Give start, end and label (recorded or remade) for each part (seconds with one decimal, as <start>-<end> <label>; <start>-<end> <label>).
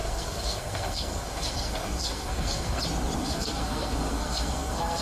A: 0.0-2.8 remade; 2.8-3.2 recorded; 3.2-5.0 remade